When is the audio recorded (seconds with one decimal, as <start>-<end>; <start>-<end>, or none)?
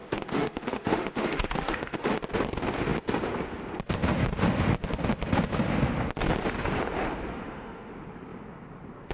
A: 2.2-7.3; 7.9-9.1